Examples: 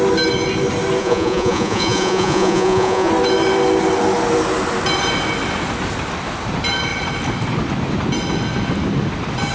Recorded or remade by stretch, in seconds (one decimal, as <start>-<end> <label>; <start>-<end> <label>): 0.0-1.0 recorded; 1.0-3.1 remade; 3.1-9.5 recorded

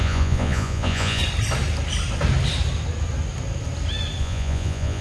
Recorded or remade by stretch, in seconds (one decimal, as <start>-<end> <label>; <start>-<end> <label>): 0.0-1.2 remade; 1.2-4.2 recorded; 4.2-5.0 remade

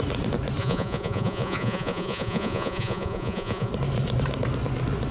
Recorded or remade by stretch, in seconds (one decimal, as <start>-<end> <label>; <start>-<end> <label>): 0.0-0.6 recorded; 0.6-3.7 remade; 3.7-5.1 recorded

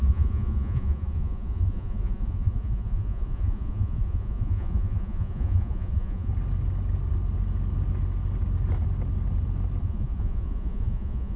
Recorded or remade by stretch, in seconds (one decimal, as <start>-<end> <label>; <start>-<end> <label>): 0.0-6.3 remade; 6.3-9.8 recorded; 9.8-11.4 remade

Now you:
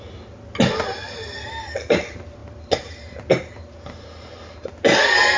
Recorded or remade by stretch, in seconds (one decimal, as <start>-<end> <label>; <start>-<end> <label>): 0.0-5.4 recorded